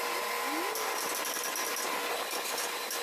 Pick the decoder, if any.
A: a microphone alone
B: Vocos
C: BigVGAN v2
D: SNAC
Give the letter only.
A